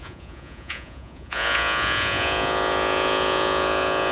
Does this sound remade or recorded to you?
remade